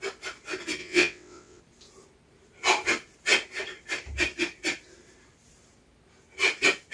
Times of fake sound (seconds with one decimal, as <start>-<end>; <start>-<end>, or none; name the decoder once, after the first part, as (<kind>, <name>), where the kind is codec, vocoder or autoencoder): 0.8-1.6 (vocoder, WaveNeXt)